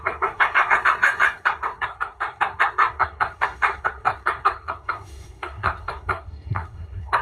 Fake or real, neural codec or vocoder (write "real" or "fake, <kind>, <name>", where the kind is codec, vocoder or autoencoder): fake, codec, SNAC